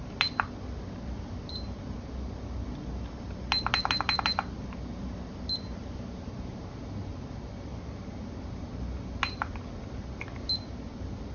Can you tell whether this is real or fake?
real